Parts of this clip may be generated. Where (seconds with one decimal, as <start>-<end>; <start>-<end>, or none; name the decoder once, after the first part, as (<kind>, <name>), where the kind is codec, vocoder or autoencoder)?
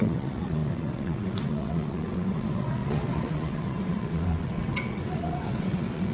0.0-6.1 (vocoder, WaveNeXt)